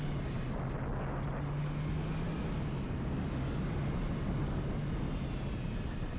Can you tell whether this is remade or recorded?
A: recorded